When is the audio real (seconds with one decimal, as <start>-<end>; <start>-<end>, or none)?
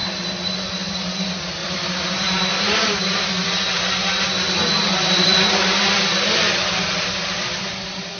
0.0-1.6; 6.0-8.2